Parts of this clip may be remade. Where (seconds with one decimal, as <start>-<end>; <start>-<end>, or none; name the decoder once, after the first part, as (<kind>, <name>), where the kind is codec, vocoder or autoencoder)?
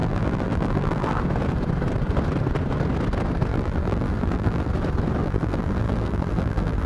0.0-1.2 (vocoder, BigVGAN v2); 3.5-4.7; 5.2-6.9